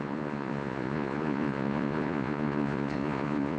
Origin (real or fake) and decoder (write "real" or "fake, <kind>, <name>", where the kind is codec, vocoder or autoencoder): fake, vocoder, Vocos